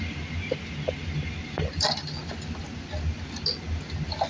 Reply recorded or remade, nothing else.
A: recorded